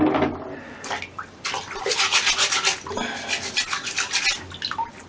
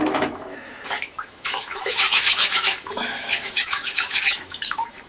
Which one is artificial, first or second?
second